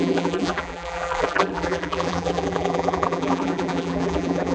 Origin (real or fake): fake